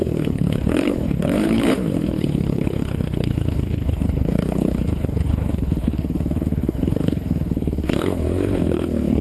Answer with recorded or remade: remade